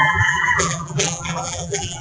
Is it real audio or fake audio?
fake